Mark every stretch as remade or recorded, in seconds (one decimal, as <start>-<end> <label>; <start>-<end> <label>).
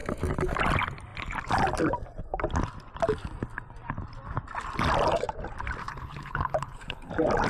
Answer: 0.0-5.8 recorded; 5.8-7.1 remade; 7.1-7.5 recorded